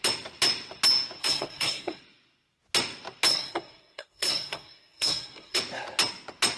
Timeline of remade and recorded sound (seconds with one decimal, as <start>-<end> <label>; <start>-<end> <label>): 0.0-1.2 recorded; 1.2-2.0 remade; 2.0-3.3 recorded; 3.3-5.6 remade; 5.6-6.6 recorded